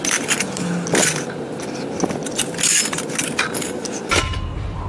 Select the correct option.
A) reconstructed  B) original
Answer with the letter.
B